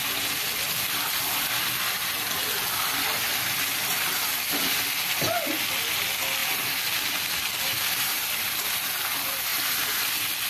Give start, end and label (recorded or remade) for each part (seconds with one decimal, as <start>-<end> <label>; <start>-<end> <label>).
0.0-10.5 recorded